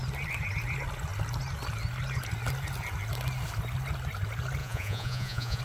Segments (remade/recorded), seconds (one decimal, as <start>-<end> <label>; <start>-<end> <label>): 0.0-4.6 recorded; 4.6-5.6 remade